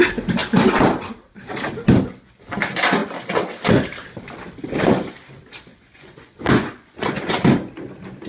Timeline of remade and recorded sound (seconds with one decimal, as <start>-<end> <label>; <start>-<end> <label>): 0.0-5.7 recorded; 5.7-7.3 remade; 7.3-8.3 recorded